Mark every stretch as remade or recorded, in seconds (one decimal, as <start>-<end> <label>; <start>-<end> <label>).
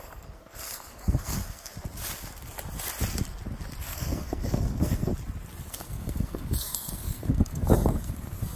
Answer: 0.0-1.7 remade; 1.7-3.8 recorded; 3.8-5.1 remade; 5.1-5.7 recorded; 5.7-8.6 remade